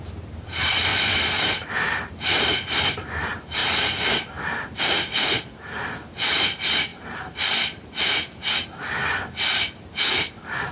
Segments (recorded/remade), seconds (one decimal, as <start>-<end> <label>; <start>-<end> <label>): 0.0-3.6 remade; 3.6-4.8 recorded; 4.8-10.7 remade